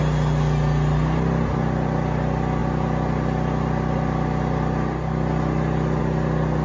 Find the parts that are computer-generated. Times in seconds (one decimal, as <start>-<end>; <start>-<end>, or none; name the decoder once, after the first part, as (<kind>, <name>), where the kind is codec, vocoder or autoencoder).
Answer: none